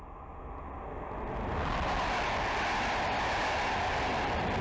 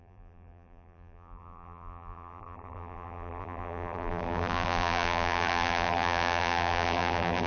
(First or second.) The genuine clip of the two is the first